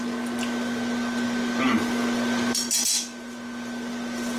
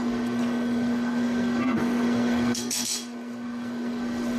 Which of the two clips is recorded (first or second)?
first